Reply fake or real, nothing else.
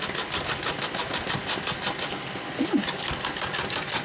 real